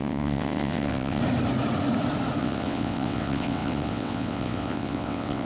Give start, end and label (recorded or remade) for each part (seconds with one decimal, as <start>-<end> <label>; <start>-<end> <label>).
0.0-1.2 remade; 1.2-2.4 recorded; 2.4-5.5 remade